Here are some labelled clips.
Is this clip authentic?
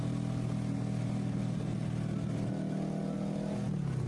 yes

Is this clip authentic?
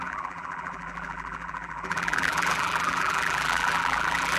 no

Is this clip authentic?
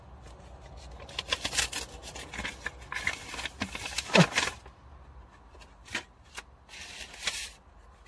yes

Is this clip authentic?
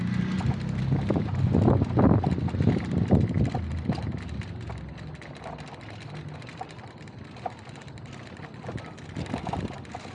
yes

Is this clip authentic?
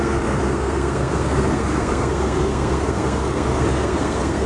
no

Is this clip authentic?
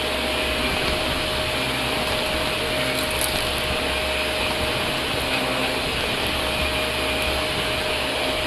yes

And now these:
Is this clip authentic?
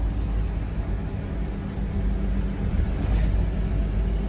yes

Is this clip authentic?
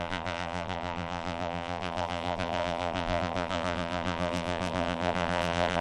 no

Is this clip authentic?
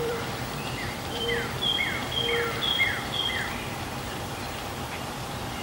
no